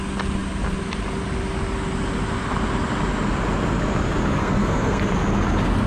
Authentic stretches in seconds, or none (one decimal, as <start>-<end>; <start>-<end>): 0.0-4.4; 5.0-5.9

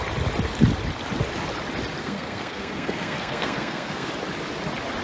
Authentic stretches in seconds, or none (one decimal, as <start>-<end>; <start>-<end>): 0.0-2.0; 4.1-5.0

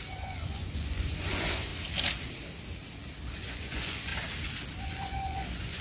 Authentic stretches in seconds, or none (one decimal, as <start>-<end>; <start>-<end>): 1.7-3.4; 4.1-4.8